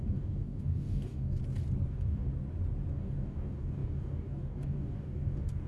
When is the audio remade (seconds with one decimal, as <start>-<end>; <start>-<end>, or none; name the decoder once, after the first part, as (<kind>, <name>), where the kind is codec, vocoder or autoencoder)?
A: 0.0-1.4 (codec, DAC); 1.9-2.3; 2.9-5.7